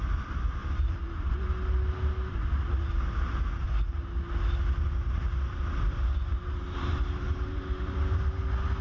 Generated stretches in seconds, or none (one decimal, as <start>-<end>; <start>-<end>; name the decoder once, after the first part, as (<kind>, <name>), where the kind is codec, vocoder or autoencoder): 0.6-1.3 (vocoder, BigVGAN v2); 6.3-8.0